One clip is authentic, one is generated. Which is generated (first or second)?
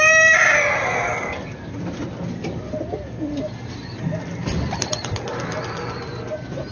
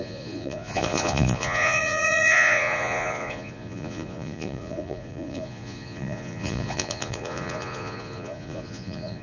second